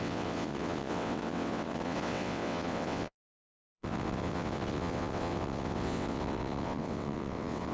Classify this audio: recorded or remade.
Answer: remade